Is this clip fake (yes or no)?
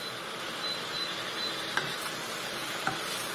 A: no